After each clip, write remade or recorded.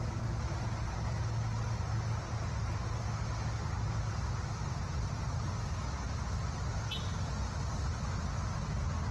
recorded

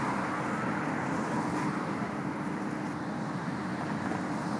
recorded